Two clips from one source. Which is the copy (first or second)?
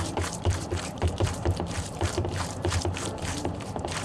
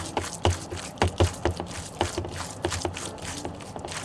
first